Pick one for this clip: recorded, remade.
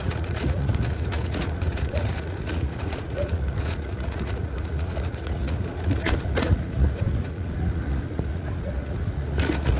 remade